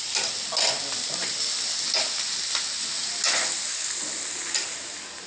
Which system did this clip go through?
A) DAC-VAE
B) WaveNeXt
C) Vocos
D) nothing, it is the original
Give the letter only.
D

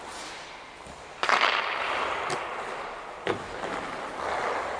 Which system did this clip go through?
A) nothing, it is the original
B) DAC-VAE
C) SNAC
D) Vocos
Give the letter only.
A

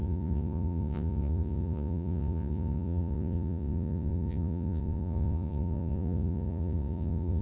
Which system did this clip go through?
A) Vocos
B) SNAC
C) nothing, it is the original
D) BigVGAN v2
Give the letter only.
A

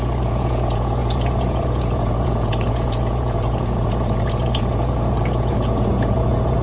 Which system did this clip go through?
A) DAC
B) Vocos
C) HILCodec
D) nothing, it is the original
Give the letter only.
B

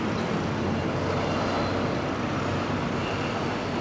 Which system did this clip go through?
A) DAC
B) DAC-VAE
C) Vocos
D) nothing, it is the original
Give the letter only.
D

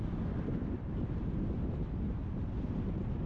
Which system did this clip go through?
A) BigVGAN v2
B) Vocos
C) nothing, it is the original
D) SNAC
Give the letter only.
C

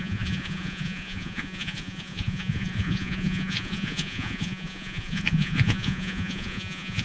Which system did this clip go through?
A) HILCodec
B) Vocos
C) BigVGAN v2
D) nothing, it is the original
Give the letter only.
B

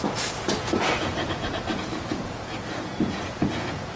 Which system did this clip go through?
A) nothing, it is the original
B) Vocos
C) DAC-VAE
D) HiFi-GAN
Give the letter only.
B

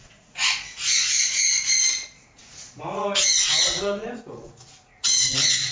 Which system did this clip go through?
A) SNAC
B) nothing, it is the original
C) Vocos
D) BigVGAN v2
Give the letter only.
C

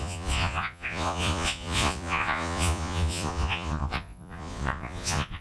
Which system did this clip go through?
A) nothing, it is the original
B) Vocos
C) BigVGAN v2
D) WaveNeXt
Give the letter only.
B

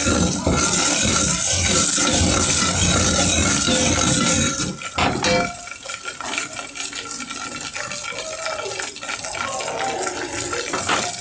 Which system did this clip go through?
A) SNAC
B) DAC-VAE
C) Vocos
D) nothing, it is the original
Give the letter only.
D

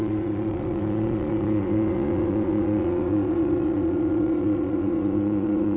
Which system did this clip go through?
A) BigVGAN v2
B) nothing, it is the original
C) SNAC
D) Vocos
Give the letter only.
D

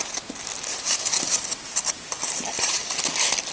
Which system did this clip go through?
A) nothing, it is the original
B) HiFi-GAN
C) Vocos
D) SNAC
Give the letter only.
A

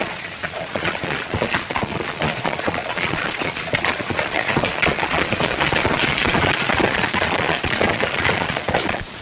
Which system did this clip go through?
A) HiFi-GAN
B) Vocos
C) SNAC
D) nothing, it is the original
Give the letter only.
B